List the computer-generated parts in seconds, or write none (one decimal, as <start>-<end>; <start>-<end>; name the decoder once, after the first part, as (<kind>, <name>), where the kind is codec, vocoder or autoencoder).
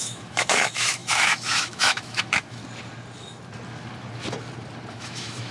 0.0-2.6 (autoencoder, DAC-VAE); 4.9-5.5